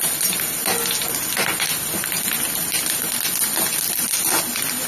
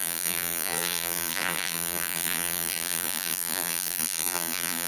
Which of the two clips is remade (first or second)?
second